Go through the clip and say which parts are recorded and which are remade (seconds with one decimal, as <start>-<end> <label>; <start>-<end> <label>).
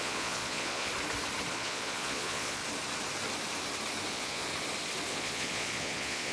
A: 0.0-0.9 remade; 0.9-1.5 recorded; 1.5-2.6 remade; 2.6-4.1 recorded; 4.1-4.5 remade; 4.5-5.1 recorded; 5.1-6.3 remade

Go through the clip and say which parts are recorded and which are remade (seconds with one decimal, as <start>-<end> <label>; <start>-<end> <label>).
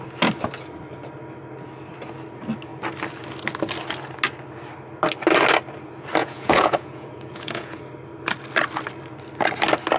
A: 0.0-6.2 recorded; 6.2-7.8 remade; 7.8-10.0 recorded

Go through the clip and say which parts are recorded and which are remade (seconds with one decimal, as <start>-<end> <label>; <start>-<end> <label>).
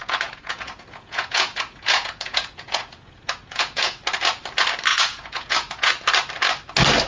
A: 0.0-4.0 remade; 4.0-4.9 recorded; 4.9-5.9 remade; 5.9-7.1 recorded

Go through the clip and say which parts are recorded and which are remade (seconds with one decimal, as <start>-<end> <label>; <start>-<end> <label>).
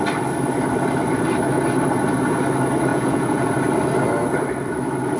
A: 0.0-2.9 recorded; 2.9-3.5 remade; 3.5-5.2 recorded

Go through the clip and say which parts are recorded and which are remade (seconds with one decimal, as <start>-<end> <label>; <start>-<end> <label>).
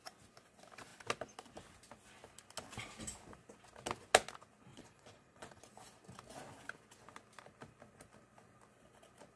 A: 0.0-4.7 recorded; 4.7-5.6 remade; 5.6-9.4 recorded